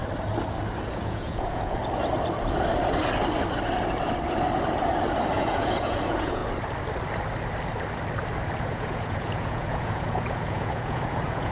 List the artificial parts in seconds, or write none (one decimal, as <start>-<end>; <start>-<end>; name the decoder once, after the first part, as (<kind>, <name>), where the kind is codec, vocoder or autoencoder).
0.9-1.8 (vocoder, Vocos); 5.3-6.4; 8.6-11.5